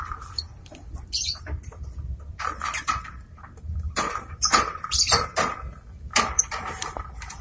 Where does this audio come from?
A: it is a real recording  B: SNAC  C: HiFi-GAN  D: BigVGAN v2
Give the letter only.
D